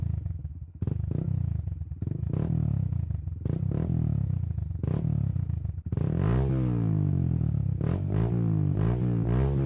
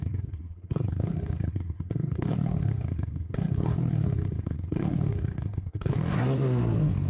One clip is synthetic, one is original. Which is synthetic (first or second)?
second